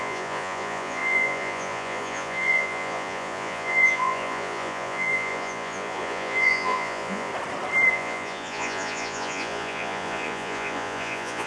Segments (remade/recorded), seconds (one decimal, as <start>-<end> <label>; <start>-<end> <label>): 0.0-7.3 remade; 7.3-7.9 recorded; 7.9-11.5 remade